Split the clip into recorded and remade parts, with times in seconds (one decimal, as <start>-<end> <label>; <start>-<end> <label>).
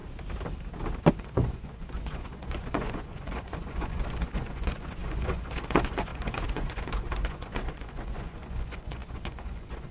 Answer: 0.0-1.1 recorded; 1.1-9.9 remade